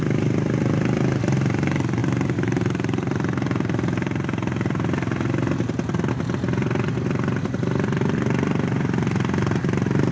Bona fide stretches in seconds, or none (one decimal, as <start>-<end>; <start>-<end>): 0.0-10.1